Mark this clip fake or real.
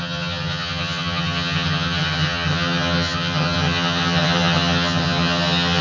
fake